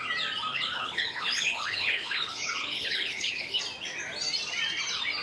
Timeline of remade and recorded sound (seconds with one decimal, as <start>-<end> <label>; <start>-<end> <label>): 0.0-0.5 recorded; 0.5-3.6 remade; 3.6-5.2 recorded